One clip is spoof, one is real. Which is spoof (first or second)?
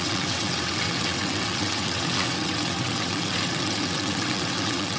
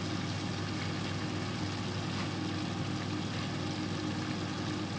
first